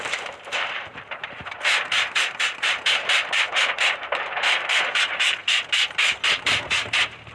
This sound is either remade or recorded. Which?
remade